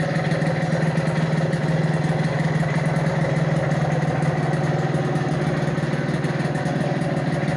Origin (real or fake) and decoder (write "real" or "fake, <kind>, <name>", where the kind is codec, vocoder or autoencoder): real